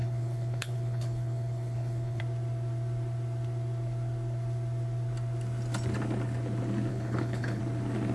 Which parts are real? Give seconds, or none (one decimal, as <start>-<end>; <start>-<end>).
2.2-6.9; 7.6-8.1